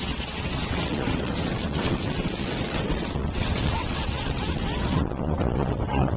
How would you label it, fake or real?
fake